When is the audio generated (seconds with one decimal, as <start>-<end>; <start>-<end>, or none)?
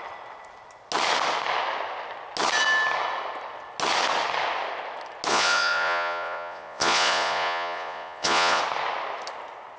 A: 5.3-8.6